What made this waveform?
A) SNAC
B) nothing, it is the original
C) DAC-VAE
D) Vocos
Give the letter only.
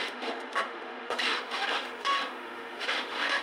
C